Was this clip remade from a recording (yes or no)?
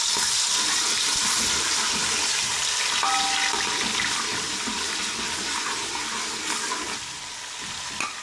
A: no